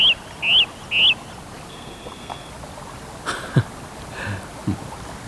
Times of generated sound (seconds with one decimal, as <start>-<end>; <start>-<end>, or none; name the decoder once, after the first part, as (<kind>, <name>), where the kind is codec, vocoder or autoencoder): 1.7-2.5 (codec, SNAC)